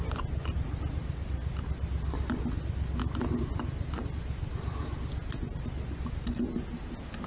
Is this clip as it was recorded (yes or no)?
yes